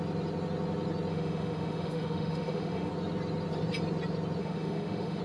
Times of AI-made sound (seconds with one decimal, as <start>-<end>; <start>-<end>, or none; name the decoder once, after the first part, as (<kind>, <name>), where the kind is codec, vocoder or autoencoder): 1.1-2.9 (autoencoder, DAC-VAE); 4.4-5.2